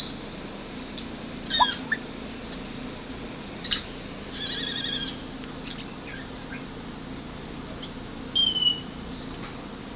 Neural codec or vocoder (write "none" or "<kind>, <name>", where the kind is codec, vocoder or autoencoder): none